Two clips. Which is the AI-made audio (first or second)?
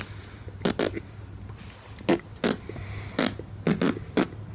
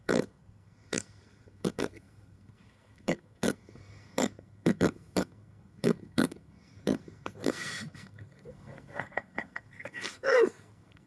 second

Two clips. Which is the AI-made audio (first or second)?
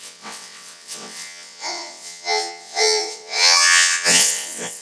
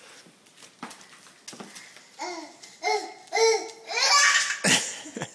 first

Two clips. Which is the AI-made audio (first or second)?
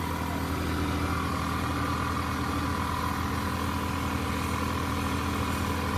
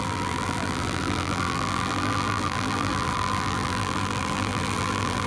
second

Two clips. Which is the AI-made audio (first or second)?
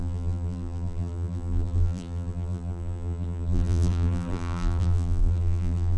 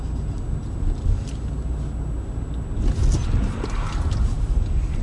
first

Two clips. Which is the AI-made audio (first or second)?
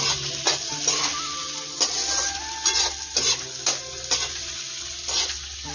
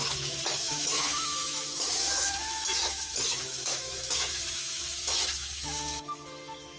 second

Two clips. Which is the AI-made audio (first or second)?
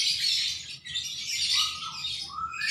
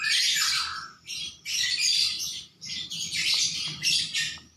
second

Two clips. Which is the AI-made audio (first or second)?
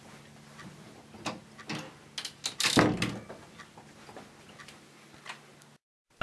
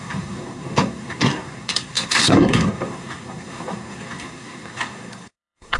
second